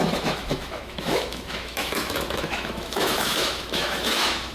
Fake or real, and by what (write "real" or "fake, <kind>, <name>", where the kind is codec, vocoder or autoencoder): fake, autoencoder, DAC-VAE